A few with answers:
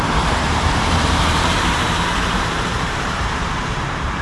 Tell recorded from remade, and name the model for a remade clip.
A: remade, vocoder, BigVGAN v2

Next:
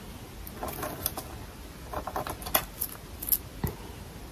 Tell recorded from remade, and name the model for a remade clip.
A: recorded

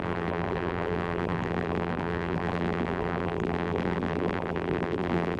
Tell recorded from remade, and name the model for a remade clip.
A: remade, vocoder, BigVGAN v2